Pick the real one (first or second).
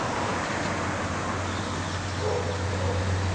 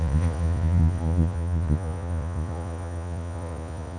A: first